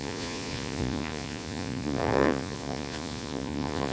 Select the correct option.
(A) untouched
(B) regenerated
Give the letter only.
B